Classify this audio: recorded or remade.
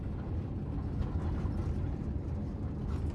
recorded